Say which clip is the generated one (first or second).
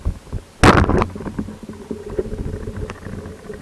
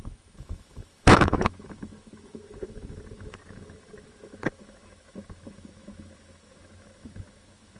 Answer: second